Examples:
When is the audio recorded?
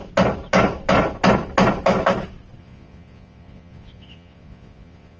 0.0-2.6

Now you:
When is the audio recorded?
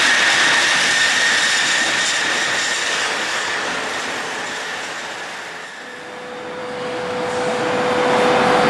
0.0-2.8; 3.8-6.6; 7.6-8.7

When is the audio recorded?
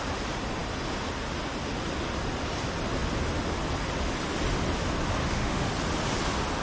0.0-5.2; 5.7-6.6